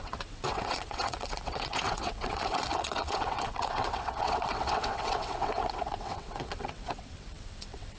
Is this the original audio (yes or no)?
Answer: no